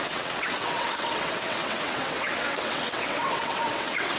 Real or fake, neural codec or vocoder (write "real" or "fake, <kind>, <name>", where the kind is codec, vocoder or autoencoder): fake, vocoder, WaveNeXt